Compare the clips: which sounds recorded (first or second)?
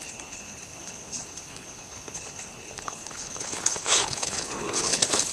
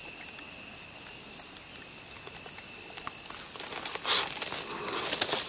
second